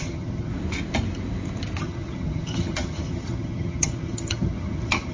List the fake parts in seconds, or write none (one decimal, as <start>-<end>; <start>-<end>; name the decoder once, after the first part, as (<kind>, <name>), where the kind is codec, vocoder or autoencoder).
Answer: 0.0-0.5 (vocoder, HiFi-GAN); 1.8-5.1